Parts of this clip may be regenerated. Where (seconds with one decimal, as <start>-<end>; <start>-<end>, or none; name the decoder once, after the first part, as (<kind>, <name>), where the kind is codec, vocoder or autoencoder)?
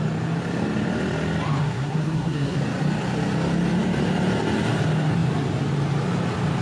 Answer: 1.6-2.6 (codec, SNAC)